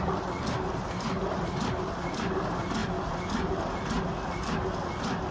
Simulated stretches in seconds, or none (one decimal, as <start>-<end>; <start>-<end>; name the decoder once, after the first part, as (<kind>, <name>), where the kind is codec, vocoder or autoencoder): none